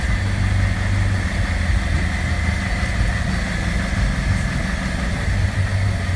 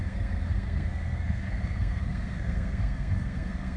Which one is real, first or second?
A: first